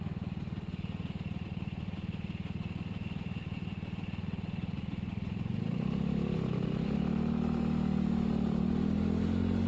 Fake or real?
real